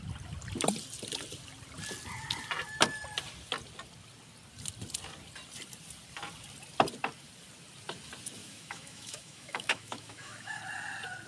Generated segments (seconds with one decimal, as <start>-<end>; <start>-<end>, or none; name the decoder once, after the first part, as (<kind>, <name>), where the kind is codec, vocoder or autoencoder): 8.4-10.6 (autoencoder, DAC-VAE)